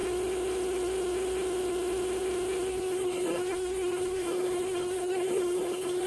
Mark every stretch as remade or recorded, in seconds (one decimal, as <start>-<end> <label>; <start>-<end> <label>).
0.0-2.7 recorded; 2.7-6.1 remade